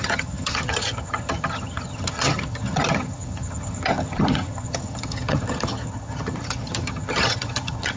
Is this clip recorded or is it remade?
remade